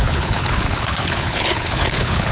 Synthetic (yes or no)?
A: yes